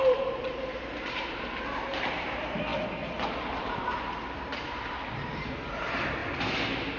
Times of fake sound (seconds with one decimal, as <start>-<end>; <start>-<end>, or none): 0.0-2.7; 3.6-6.2